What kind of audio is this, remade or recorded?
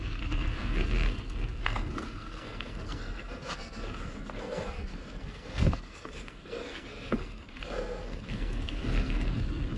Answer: remade